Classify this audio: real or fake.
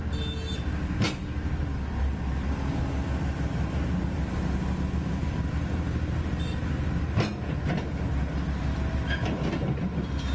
real